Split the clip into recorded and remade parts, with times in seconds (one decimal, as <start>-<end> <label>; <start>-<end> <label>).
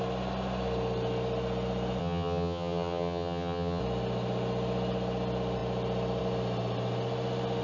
0.0-2.0 recorded; 2.0-3.8 remade; 3.8-7.6 recorded